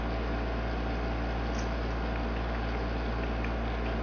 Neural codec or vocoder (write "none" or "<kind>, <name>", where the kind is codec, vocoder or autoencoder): none